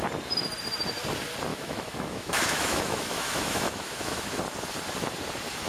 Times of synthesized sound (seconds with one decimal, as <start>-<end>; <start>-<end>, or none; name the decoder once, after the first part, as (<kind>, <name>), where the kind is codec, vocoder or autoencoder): 1.5-4.4 (autoencoder, DAC-VAE)